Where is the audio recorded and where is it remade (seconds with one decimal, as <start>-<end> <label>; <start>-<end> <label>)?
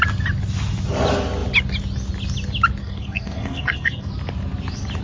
0.0-2.8 recorded; 2.8-4.1 remade; 4.1-5.0 recorded